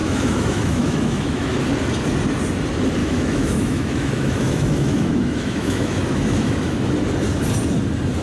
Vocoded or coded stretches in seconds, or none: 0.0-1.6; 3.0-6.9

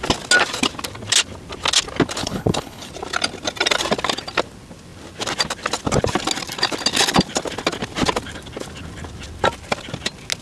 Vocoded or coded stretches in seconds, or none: 2.2-2.9

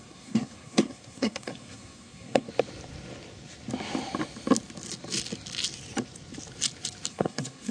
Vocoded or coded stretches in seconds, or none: 0.0-2.5; 7.1-7.7